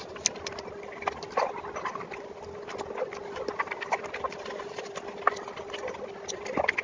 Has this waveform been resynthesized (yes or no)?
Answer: no